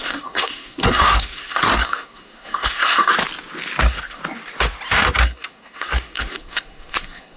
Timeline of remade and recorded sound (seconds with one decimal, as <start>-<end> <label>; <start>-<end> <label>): 0.0-3.1 remade; 3.1-3.8 recorded; 3.8-4.2 remade; 4.2-5.2 recorded; 5.2-7.4 remade